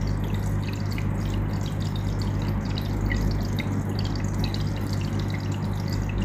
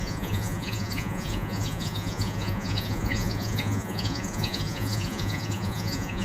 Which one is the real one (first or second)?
first